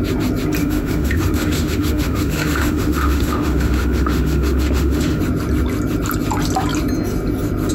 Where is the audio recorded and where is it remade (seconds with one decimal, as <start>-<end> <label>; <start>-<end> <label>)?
0.0-0.6 recorded; 0.6-5.2 remade; 5.2-7.7 recorded